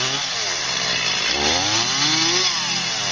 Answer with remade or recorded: recorded